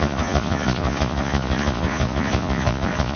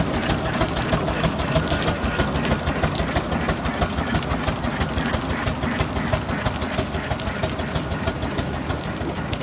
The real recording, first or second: second